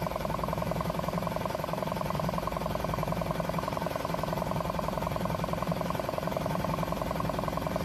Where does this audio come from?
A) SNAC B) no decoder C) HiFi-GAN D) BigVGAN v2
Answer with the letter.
D